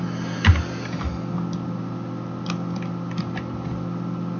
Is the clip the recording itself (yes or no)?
yes